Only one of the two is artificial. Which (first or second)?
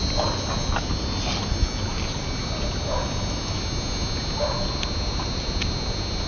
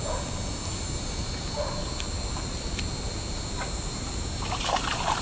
second